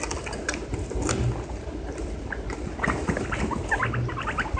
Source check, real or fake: real